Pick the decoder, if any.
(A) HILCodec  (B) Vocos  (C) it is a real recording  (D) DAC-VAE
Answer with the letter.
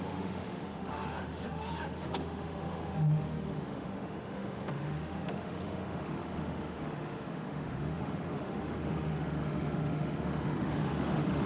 D